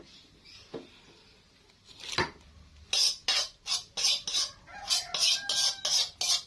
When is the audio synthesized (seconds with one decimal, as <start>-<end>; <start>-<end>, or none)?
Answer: none